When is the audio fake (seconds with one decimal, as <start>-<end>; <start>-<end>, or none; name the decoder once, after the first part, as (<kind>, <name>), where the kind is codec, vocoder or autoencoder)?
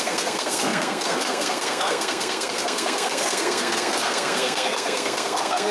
0.0-5.7 (codec, SNAC)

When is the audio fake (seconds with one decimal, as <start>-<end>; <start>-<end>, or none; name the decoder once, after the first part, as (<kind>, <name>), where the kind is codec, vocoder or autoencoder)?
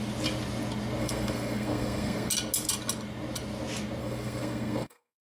1.0-2.3 (codec, SNAC); 4.0-5.3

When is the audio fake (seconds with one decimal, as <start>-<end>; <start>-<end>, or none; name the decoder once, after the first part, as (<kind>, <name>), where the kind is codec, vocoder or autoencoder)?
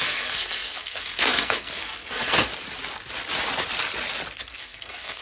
0.0-2.5 (codec, SNAC); 4.4-5.2